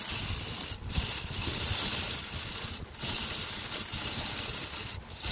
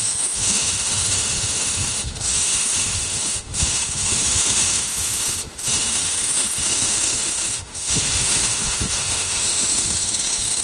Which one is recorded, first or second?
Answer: first